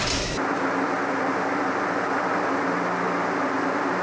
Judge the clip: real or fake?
real